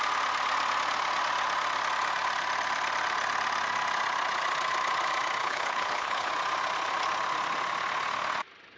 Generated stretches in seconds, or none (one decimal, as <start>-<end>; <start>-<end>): 5.4-6.3